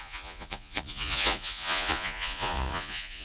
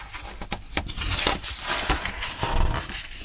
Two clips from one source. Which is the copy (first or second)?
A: first